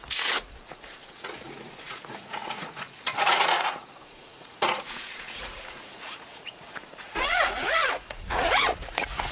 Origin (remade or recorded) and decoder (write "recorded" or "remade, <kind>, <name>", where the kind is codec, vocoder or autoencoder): remade, vocoder, Vocos